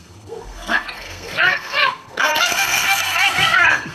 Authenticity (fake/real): fake